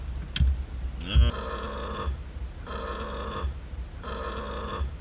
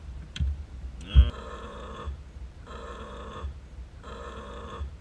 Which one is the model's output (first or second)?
second